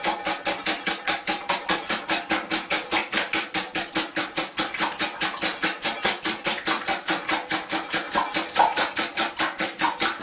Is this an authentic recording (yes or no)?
yes